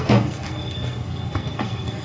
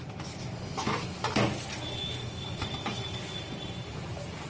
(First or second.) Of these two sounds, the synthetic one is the first